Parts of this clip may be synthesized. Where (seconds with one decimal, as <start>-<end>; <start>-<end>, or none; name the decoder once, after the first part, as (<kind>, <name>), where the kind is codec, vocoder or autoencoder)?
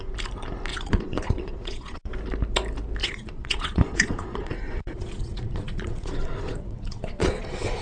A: 0.7-2.1 (vocoder, Vocos); 3.0-7.8